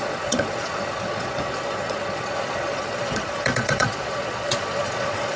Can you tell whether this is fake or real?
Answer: fake